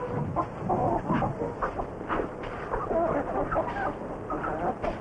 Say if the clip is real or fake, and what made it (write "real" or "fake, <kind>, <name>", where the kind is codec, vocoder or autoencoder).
real